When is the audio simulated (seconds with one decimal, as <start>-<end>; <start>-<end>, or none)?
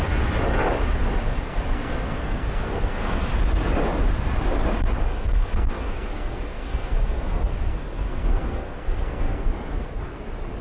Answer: 1.3-3.3; 5.1-10.2